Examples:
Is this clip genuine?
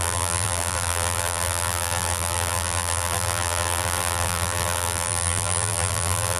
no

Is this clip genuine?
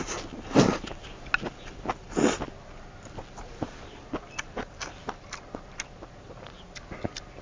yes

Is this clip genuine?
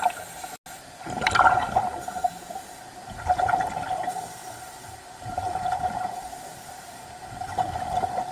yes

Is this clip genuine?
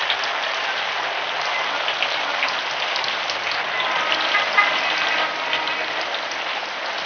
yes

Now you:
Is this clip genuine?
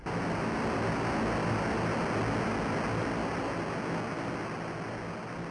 yes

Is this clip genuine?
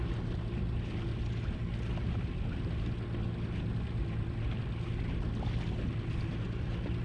yes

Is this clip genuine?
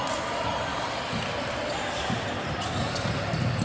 yes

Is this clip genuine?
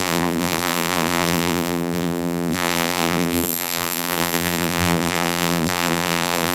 no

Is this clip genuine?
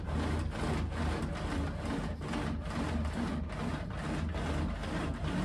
yes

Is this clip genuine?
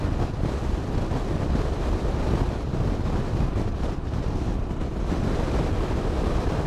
yes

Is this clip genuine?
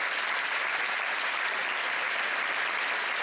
yes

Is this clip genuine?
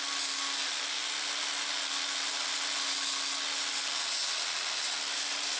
yes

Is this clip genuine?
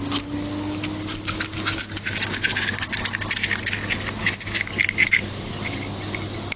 yes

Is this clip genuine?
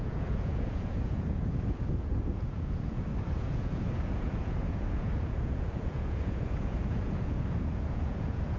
no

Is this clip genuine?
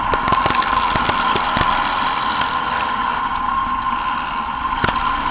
yes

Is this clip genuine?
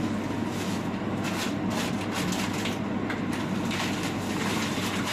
yes